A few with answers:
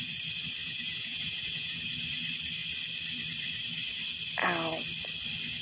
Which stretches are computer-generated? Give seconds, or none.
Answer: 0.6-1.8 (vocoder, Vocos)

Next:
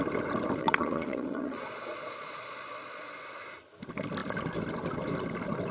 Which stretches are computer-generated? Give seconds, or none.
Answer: 0.6-3.1 (vocoder, Vocos)

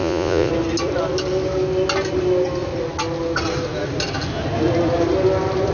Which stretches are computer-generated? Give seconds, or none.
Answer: 0.0-0.5 (vocoder, Vocos)

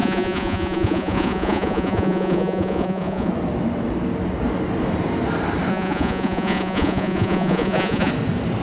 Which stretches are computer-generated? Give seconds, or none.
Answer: 0.0-3.3 (vocoder, Vocos); 5.7-8.1

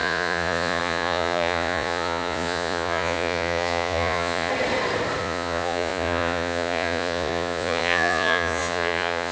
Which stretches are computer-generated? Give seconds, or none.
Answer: 0.0-4.5 (vocoder, Vocos); 5.2-9.3

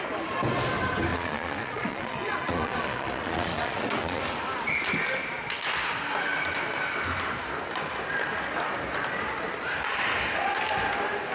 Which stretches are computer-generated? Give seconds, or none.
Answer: 1.1-4.2 (vocoder, Vocos)

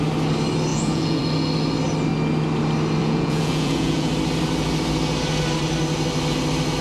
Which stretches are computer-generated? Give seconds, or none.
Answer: 0.7-1.2 (vocoder, Vocos); 3.0-4.1